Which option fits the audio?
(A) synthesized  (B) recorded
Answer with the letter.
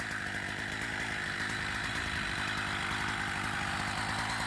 B